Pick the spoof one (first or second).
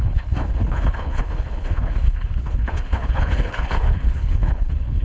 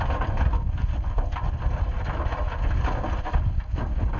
first